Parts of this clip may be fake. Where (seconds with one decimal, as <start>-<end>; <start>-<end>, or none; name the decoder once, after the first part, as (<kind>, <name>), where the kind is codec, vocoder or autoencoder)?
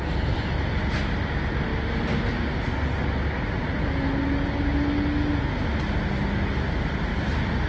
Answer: none